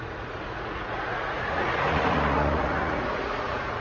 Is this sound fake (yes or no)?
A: yes